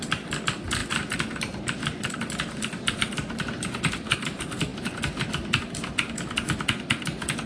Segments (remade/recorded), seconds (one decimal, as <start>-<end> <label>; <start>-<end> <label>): 0.0-7.5 recorded